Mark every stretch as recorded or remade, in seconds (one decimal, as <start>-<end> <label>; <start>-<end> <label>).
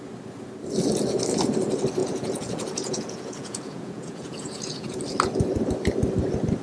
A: 0.0-2.0 recorded; 2.0-5.0 remade; 5.0-6.6 recorded